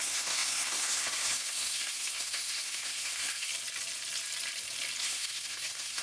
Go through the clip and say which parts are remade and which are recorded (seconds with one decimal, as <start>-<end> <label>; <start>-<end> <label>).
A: 0.0-3.5 remade; 3.5-5.0 recorded; 5.0-6.0 remade